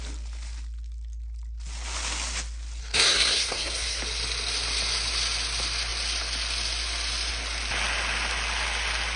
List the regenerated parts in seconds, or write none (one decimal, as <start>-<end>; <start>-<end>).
2.8-4.0